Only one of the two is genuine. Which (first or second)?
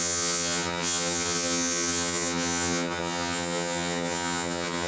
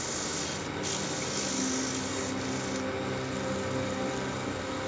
second